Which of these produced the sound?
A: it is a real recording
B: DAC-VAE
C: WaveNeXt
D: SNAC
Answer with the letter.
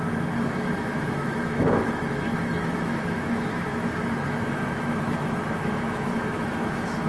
B